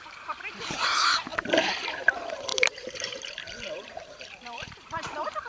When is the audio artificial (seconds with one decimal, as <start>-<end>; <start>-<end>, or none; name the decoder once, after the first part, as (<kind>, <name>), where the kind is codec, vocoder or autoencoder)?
0.0-5.5 (vocoder, BigVGAN v2)